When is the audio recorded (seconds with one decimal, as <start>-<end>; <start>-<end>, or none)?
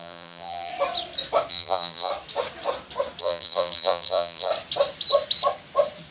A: 0.7-1.5; 2.1-3.2; 4.5-6.1